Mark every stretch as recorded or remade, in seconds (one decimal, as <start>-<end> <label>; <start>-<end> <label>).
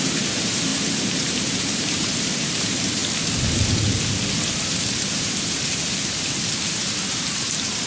0.0-3.0 remade; 3.0-4.5 recorded; 4.5-7.9 remade